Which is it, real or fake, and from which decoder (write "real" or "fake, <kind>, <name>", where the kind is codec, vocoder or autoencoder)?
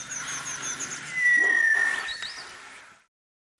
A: real